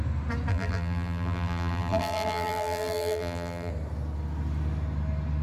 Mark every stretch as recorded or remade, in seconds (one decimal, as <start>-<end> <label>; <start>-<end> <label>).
0.0-0.5 recorded; 0.5-3.7 remade; 3.7-5.4 recorded